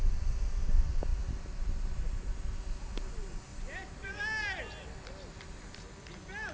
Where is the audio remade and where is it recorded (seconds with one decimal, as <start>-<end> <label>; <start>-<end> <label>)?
0.0-3.5 recorded; 3.5-4.6 remade; 4.6-6.5 recorded